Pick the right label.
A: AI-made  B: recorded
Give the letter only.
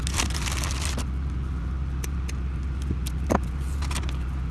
B